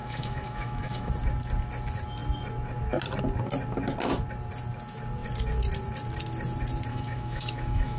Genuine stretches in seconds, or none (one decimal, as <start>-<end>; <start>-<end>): 1.1-6.9